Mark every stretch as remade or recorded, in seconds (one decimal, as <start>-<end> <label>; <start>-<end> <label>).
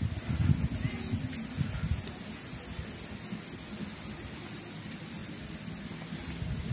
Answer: 0.0-6.7 recorded